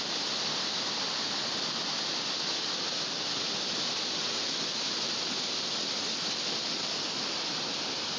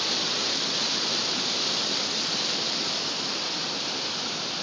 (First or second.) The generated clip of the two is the second